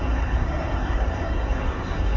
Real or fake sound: fake